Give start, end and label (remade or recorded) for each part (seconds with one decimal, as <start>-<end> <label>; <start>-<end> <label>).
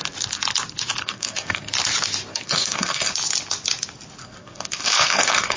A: 0.0-1.0 recorded; 1.0-1.7 remade; 1.7-2.3 recorded; 2.3-3.1 remade; 3.1-4.2 recorded; 4.2-5.6 remade